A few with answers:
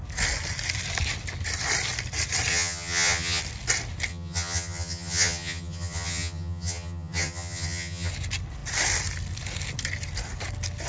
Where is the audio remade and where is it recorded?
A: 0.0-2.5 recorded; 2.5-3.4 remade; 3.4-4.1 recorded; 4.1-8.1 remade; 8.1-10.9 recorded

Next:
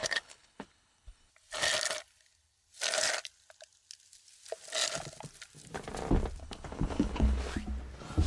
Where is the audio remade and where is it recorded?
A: 0.0-1.3 remade; 1.3-6.4 recorded; 6.4-7.4 remade; 7.4-8.3 recorded

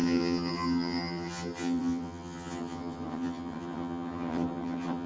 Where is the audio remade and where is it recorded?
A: 0.0-5.1 remade

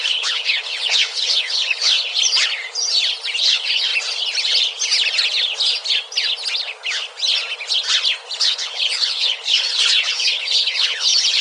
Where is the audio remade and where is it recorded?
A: 0.0-2.1 remade; 2.1-3.4 recorded; 3.4-3.9 remade; 3.9-8.4 recorded; 8.4-11.4 remade